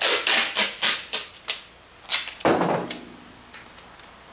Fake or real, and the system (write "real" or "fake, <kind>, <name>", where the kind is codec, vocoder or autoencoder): real